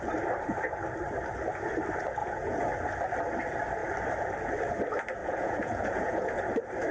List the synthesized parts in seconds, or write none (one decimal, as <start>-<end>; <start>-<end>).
2.2-2.7; 5.2-6.4